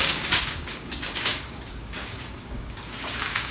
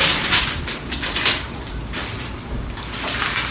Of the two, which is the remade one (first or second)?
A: first